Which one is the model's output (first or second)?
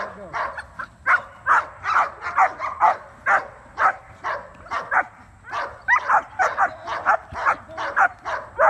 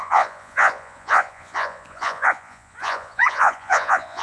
second